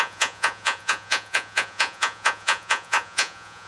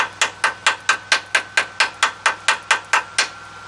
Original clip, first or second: second